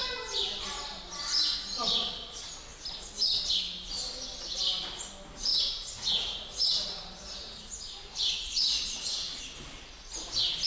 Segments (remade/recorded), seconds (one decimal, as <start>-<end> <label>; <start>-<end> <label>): 0.0-5.5 recorded; 5.5-9.4 remade; 9.4-10.7 recorded